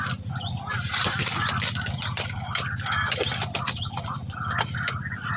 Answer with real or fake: real